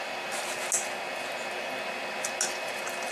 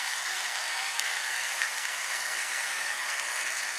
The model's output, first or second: second